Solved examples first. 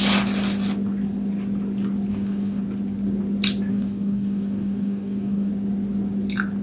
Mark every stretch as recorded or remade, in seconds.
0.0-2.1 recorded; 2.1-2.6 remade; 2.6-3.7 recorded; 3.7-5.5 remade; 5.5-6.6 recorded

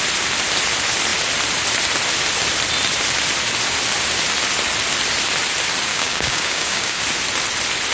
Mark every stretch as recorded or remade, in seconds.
0.0-5.9 recorded; 5.9-7.0 remade; 7.0-7.9 recorded

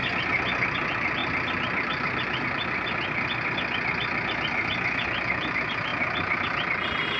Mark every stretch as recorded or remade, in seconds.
0.0-7.2 recorded

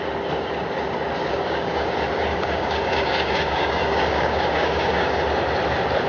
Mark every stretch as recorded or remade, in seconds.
0.0-1.3 recorded; 1.3-1.9 remade; 1.9-2.3 recorded; 2.3-5.2 remade; 5.2-6.1 recorded

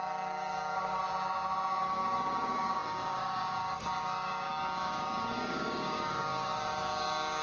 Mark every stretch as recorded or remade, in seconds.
0.0-1.0 remade; 1.0-1.8 recorded; 1.8-7.4 remade

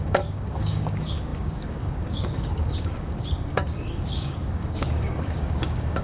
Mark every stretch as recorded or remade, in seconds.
0.0-6.0 remade